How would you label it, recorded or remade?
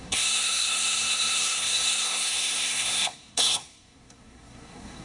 remade